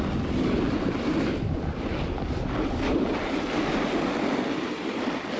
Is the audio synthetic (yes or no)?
no